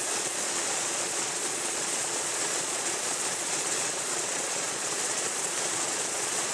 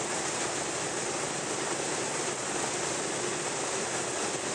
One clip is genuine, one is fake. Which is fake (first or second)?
first